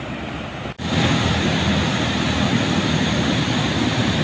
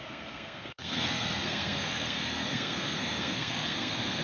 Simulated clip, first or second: second